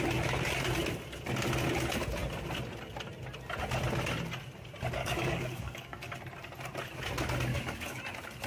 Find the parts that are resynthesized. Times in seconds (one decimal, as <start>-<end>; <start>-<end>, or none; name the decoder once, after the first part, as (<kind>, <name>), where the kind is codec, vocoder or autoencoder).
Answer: 5.0-6.1 (codec, DAC); 7.5-8.0